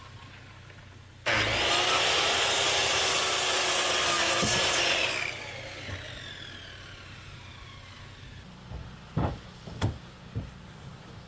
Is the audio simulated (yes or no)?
no